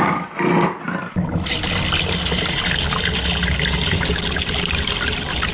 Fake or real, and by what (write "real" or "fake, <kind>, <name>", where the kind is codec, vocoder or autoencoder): real